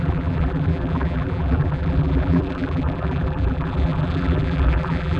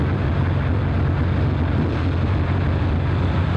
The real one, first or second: second